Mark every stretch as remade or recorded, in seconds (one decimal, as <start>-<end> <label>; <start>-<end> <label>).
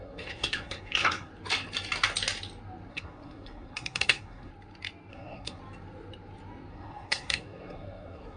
0.0-1.3 remade; 1.3-2.9 recorded; 2.9-4.5 remade; 4.5-5.1 recorded; 5.1-5.6 remade; 5.6-6.7 recorded; 6.7-8.4 remade